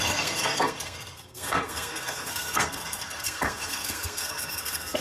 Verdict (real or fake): fake